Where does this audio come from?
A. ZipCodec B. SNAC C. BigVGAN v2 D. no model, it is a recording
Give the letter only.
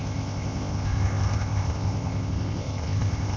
A